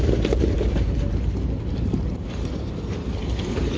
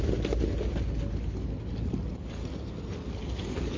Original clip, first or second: second